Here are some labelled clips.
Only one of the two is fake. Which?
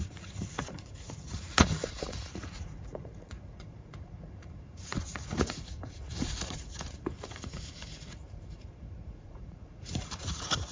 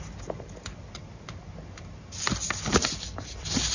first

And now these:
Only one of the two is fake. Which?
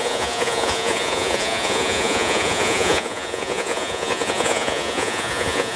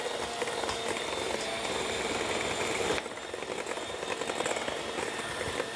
first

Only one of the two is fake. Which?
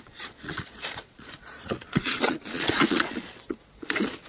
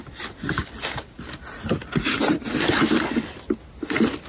first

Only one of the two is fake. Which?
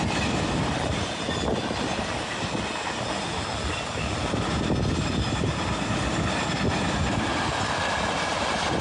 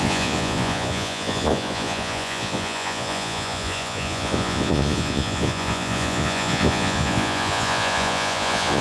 second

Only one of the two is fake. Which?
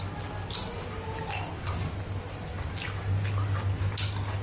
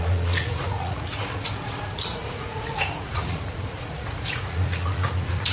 second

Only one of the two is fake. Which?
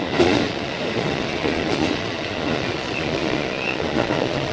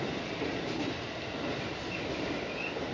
first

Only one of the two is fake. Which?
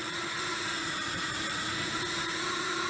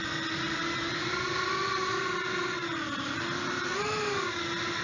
first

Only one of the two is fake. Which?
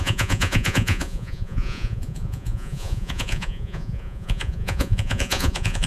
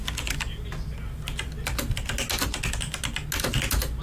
first